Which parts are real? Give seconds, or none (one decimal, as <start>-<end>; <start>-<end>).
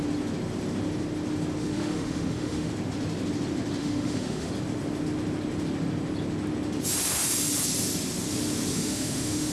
0.0-1.6; 2.7-3.8; 4.5-8.7